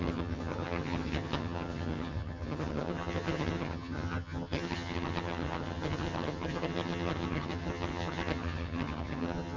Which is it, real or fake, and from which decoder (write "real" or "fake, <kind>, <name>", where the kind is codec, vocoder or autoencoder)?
fake, vocoder, HiFi-GAN